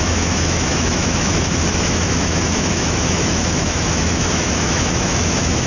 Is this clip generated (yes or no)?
yes